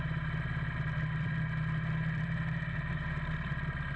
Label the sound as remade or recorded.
remade